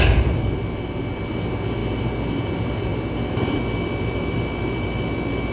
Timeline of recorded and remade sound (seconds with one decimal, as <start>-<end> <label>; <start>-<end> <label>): 0.0-5.5 recorded